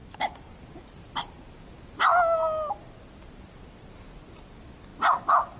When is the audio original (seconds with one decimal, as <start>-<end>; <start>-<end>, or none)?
0.0-3.4; 4.9-5.6